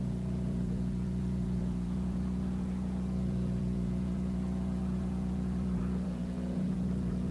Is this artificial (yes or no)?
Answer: yes